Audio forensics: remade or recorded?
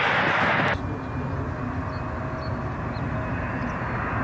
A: recorded